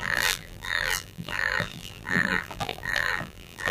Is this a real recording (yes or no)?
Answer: no